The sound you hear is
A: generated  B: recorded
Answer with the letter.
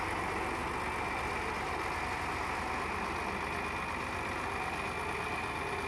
B